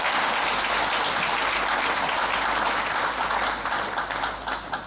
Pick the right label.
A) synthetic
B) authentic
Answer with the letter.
B